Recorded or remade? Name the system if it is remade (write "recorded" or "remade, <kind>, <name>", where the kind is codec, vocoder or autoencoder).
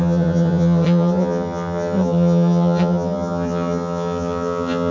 remade, vocoder, HiFi-GAN